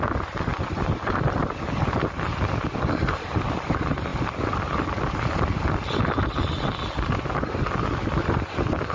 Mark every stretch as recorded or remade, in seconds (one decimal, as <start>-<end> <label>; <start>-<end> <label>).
0.0-8.9 recorded